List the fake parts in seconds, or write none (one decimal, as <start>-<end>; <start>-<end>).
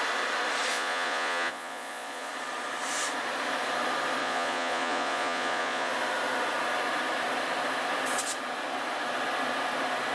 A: 0.7-2.3; 4.2-5.9